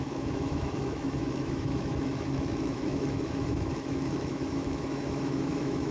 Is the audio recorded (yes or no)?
no